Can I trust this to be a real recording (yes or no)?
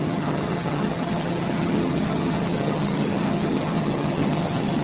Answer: no